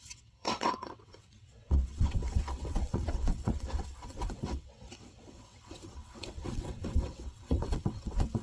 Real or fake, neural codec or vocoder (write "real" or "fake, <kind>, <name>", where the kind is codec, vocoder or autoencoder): fake, vocoder, WaveNeXt